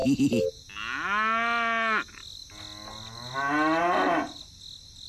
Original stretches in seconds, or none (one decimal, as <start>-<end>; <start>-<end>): 0.0-5.1